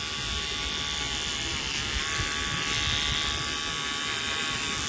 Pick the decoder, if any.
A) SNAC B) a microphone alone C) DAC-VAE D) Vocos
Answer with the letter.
B